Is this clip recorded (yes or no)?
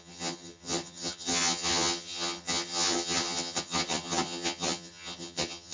no